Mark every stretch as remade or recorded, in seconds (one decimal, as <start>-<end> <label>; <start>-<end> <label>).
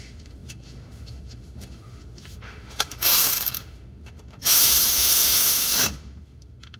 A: 0.0-6.8 remade